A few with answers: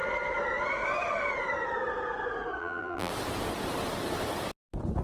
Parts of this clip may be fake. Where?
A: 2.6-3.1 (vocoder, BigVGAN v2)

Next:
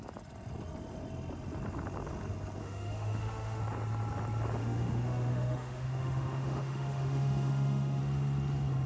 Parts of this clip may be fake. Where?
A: 2.6-3.6 (autoencoder, DAC-VAE); 4.6-8.0

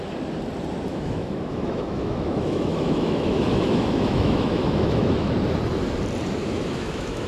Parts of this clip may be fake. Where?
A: 0.9-5.3 (autoencoder, DAC-VAE); 6.4-7.3